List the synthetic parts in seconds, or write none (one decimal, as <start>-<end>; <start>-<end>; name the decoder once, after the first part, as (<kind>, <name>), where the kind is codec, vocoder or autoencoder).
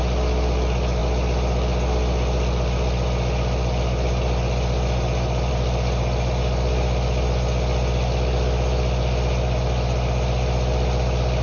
none